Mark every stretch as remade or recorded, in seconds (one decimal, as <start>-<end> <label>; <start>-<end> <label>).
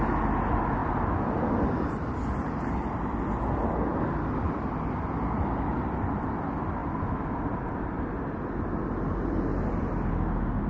0.0-0.8 recorded; 0.8-3.4 remade; 3.4-3.9 recorded; 3.9-5.2 remade; 5.2-6.8 recorded; 6.8-8.0 remade; 8.0-9.5 recorded; 9.5-10.1 remade; 10.1-10.7 recorded